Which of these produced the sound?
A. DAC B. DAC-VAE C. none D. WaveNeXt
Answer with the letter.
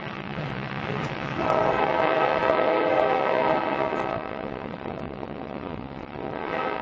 D